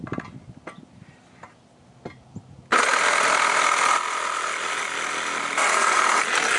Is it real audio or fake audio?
real